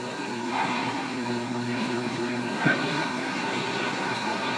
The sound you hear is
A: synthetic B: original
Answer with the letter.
A